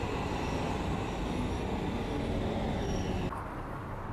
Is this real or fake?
real